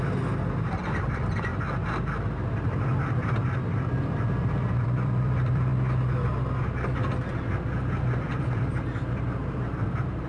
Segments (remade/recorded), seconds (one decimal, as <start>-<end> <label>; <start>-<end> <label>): 0.0-1.5 remade; 1.5-4.0 recorded; 4.0-5.7 remade; 5.7-7.9 recorded; 7.9-10.3 remade